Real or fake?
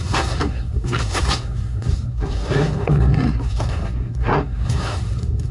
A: fake